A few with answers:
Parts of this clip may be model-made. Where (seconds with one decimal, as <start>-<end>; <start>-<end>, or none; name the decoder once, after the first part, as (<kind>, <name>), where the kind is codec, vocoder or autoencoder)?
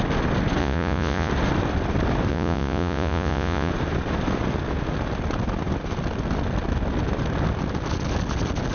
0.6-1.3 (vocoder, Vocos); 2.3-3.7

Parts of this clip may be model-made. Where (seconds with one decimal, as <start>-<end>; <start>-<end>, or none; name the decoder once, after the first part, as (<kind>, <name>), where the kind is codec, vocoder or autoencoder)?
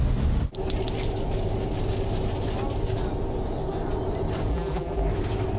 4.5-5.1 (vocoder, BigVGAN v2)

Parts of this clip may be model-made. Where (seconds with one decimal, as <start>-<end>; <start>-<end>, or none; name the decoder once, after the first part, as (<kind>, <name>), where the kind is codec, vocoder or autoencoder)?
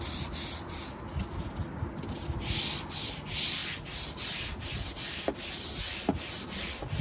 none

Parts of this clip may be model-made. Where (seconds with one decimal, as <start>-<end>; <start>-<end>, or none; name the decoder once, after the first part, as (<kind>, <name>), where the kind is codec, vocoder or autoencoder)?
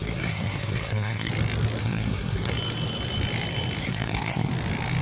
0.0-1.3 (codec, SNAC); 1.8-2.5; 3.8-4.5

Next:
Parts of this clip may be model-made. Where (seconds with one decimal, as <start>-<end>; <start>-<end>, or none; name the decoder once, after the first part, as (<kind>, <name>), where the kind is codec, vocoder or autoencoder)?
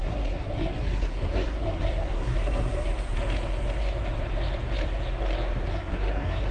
0.0-2.9 (codec, SNAC); 5.7-6.5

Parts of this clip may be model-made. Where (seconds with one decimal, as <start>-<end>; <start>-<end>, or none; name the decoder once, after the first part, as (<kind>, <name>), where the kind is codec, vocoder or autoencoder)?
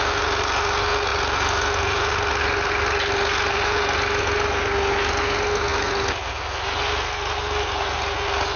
none